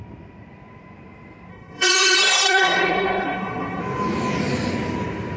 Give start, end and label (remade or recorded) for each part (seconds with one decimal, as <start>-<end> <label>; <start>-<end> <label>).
0.0-1.5 recorded; 1.5-3.8 remade; 3.8-5.4 recorded